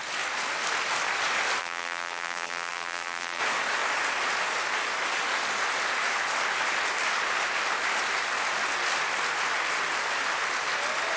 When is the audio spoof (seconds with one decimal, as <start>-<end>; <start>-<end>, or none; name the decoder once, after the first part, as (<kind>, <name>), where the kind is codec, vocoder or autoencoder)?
1.6-3.4 (vocoder, BigVGAN v2)